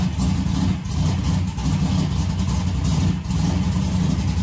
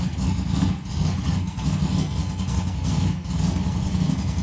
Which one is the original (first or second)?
first